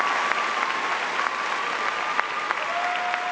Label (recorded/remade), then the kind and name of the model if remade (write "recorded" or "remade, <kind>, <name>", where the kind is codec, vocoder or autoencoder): recorded